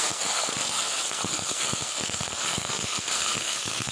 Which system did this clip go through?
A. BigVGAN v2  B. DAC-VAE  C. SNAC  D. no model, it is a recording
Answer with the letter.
C